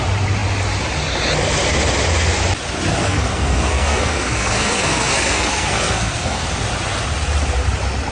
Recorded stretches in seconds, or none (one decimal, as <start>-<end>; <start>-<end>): 0.0-2.9; 6.6-8.1